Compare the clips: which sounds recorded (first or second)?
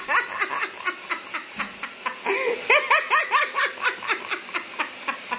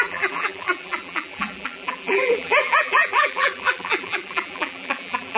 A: first